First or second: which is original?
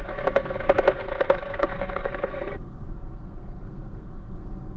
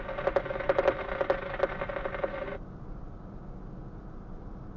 second